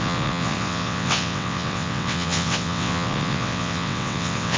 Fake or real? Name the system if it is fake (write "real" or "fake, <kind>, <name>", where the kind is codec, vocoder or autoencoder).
fake, vocoder, WaveNeXt